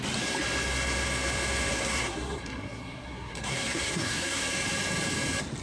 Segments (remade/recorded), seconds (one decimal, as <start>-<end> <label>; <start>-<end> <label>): 0.0-1.7 recorded; 1.7-4.5 remade; 4.5-5.6 recorded